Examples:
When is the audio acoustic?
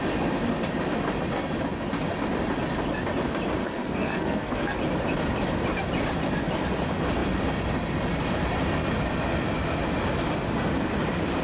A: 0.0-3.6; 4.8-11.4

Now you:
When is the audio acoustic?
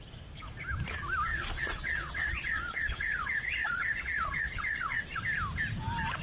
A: 0.0-1.3; 5.0-6.2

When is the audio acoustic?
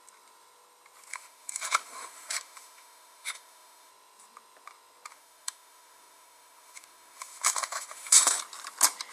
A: 0.0-1.1; 3.9-5.1; 8.4-9.1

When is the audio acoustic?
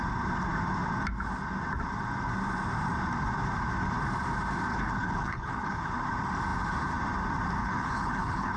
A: 0.0-4.7; 5.9-7.6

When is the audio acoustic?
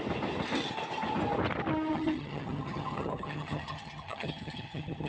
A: 0.0-1.9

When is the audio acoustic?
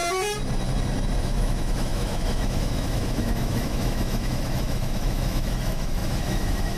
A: 0.0-1.2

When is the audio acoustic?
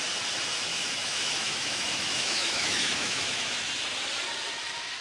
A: 0.0-0.7; 3.7-5.0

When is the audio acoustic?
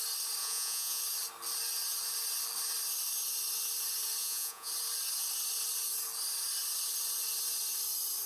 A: 0.0-0.4; 1.0-4.2; 4.7-8.3